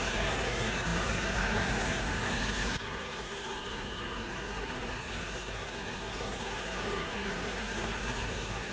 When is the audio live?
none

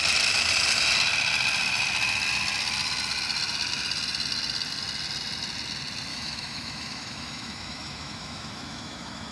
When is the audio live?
0.0-6.1

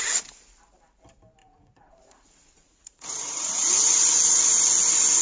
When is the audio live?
0.0-1.4; 4.5-5.2

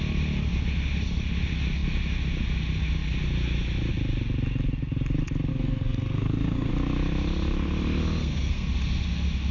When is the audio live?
0.0-5.5; 6.7-8.2; 8.7-9.5

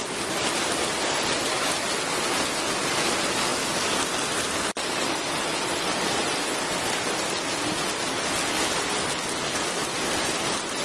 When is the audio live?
0.0-10.8

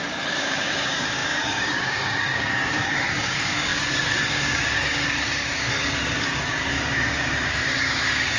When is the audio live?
none

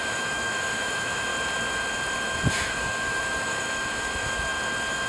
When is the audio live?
1.3-2.5; 4.5-5.1